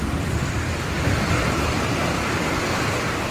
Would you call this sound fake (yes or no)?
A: no